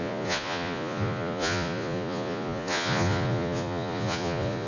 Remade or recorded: remade